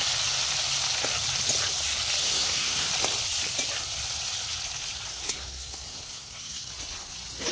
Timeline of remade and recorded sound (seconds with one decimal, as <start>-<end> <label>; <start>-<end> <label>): 0.0-2.2 recorded; 2.2-2.9 remade; 2.9-5.1 recorded; 5.1-6.7 remade; 6.7-7.5 recorded